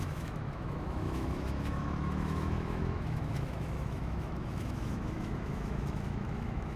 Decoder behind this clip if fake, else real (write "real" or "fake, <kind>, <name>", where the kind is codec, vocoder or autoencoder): fake, autoencoder, DAC-VAE